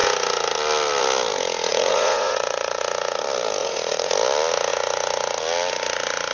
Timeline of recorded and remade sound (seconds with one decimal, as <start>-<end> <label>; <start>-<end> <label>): 0.0-1.7 recorded; 1.7-2.8 remade; 2.8-3.6 recorded; 3.6-4.1 remade; 4.1-6.3 recorded